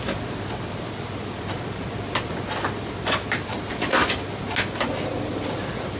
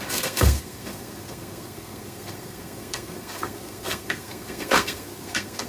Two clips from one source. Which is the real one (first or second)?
first